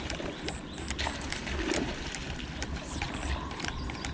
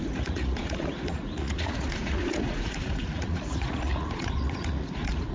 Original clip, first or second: first